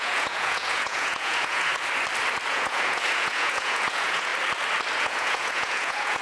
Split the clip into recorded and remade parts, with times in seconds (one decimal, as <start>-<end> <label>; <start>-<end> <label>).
0.0-1.7 remade; 1.7-2.5 recorded; 2.5-4.3 remade; 4.3-5.0 recorded; 5.0-6.2 remade

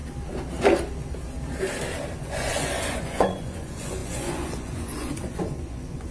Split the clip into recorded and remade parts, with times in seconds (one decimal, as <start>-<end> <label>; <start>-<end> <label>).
0.0-2.2 recorded; 2.2-6.1 remade

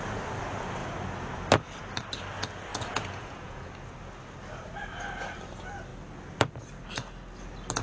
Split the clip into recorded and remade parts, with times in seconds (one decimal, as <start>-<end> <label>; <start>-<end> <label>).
0.0-2.7 recorded; 2.7-3.7 remade; 3.7-7.8 recorded

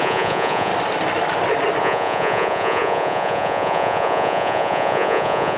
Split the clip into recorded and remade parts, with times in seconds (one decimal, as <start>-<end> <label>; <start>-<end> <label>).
0.0-0.7 remade; 0.7-1.8 recorded; 1.8-5.6 remade